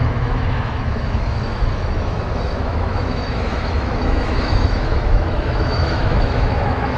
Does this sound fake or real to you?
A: fake